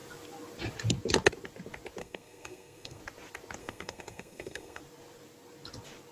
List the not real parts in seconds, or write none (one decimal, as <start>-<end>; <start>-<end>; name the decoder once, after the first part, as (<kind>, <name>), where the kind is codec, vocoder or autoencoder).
2.0-3.0 (codec, SNAC); 3.6-4.8